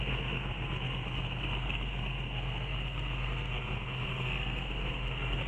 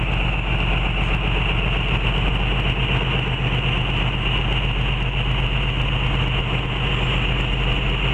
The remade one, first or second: first